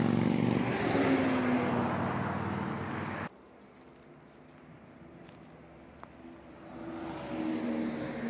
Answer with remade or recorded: recorded